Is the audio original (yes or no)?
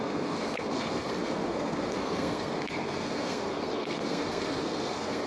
no